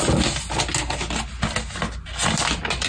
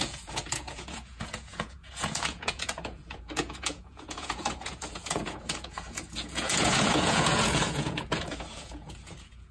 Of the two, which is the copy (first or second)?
second